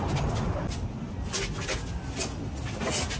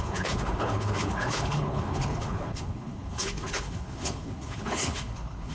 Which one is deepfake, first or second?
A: second